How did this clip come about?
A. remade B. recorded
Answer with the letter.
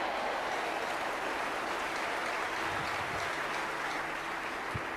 B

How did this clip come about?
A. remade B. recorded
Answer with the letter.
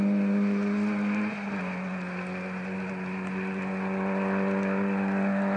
B